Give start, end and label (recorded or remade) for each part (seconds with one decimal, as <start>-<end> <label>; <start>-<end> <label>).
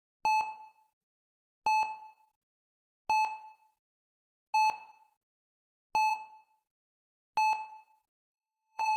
0.0-8.2 recorded; 8.2-9.0 remade